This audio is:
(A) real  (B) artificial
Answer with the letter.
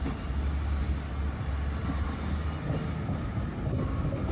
A